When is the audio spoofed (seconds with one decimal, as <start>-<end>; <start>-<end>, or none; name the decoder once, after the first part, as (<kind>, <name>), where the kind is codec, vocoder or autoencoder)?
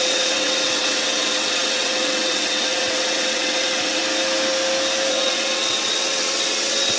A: 0.0-4.0 (vocoder, WaveNeXt); 5.1-7.0